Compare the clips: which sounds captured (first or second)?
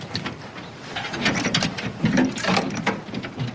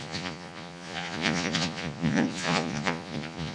first